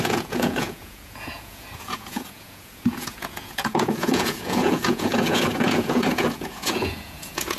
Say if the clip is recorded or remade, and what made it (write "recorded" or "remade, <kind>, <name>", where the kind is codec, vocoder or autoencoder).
remade, vocoder, Vocos